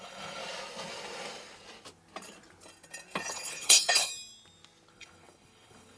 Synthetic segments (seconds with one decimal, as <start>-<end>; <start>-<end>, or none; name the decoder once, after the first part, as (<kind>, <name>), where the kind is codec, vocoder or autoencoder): 0.0-0.4 (codec, HILCodec); 3.3-4.1; 4.9-6.0